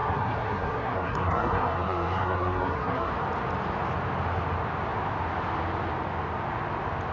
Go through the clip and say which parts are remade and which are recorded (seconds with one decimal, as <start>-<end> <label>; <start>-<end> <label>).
0.0-3.1 remade; 3.1-7.1 recorded